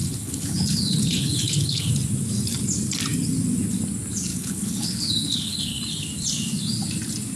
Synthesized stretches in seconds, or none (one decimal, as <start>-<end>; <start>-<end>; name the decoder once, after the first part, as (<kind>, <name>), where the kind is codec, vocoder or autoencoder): 0.0-1.9 (codec, HILCodec); 4.3-5.8